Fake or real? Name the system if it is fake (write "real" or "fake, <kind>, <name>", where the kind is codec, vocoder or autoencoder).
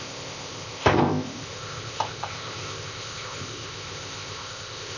fake, codec, ZipCodec